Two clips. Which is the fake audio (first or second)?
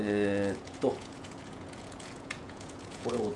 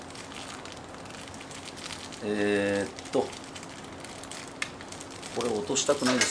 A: first